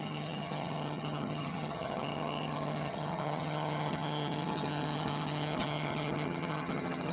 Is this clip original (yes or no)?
no